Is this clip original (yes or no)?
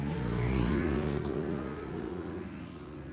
no